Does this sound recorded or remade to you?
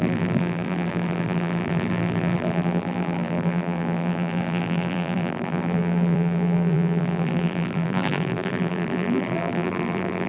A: remade